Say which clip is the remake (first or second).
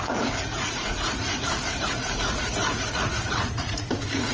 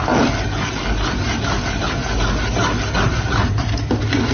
first